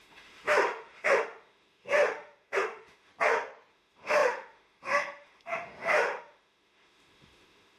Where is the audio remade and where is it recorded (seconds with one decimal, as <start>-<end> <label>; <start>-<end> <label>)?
0.0-3.1 remade; 3.1-3.7 recorded; 3.7-7.8 remade

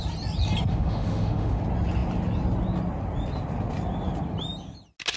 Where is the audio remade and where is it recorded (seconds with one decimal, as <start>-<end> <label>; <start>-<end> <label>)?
0.0-0.7 recorded; 0.7-1.6 remade; 1.6-5.2 recorded

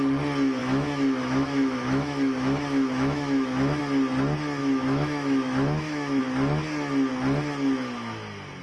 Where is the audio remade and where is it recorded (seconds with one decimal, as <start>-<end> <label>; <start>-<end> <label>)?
0.0-0.6 recorded; 0.6-3.8 remade; 3.8-4.6 recorded; 4.6-6.2 remade; 6.2-8.6 recorded